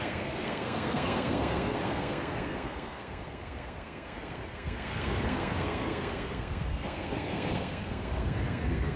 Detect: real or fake fake